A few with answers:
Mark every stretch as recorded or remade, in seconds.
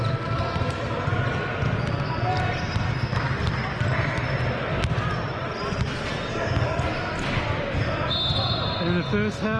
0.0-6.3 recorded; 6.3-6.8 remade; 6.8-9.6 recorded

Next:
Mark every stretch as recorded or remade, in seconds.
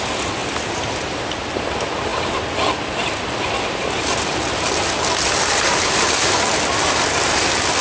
0.0-7.8 recorded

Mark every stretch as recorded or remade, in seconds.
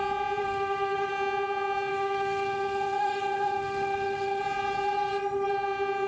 0.0-0.4 recorded; 0.4-1.1 remade; 1.1-1.9 recorded; 1.9-4.4 remade; 4.4-6.1 recorded